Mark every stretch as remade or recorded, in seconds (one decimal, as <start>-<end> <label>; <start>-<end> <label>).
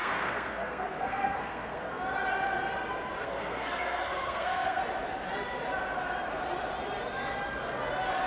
0.0-2.0 remade; 2.0-3.2 recorded; 3.2-4.8 remade; 4.8-8.3 recorded